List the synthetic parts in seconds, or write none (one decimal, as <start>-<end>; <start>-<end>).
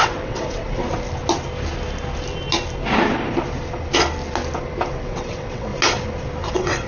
0.0-0.8; 4.9-5.7; 6.5-6.9